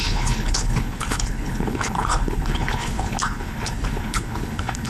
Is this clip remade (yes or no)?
yes